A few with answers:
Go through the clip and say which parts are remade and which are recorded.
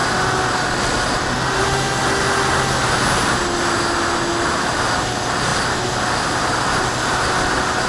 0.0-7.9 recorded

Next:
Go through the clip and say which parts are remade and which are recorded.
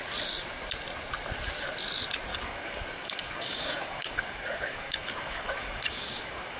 0.0-2.3 recorded; 2.3-6.6 remade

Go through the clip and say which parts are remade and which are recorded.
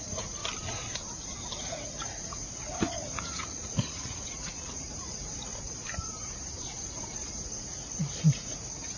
0.0-0.4 remade; 0.4-1.6 recorded; 1.6-5.5 remade; 5.5-6.9 recorded; 6.9-9.0 remade